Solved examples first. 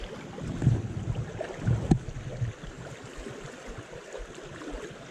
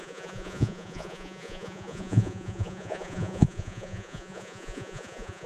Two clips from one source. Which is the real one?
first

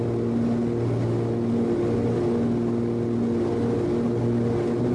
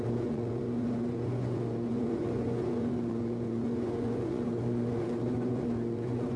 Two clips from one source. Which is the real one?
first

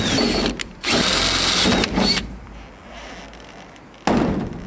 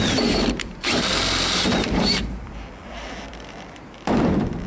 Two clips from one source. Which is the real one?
first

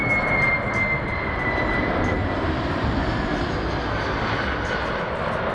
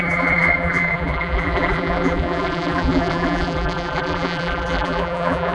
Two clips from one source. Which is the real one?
first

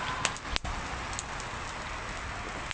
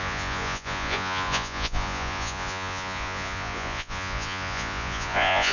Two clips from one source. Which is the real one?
first